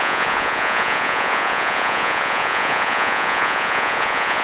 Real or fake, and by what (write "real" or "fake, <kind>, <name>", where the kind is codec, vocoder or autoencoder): fake, vocoder, Vocos